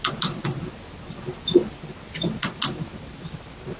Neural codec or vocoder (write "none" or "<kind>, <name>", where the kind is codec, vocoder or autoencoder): none